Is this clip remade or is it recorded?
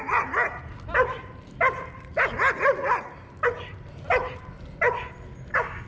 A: recorded